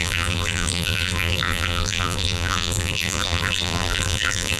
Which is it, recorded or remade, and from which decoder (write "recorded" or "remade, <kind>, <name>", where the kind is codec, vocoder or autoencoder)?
remade, vocoder, BigVGAN v2